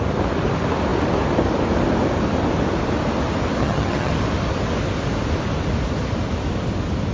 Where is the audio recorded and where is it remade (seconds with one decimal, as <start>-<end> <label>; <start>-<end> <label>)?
0.0-3.6 recorded; 3.6-4.1 remade; 4.1-7.1 recorded